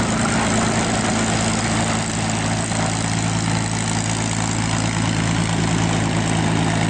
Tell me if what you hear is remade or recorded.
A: recorded